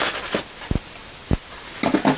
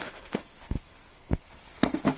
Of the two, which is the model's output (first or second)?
second